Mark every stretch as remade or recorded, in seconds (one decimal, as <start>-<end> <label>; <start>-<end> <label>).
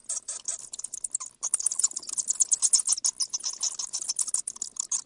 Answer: 0.0-5.1 recorded